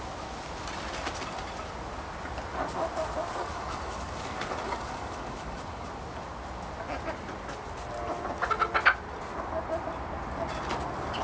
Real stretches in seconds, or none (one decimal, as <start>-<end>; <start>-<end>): 0.0-3.4; 5.9-11.2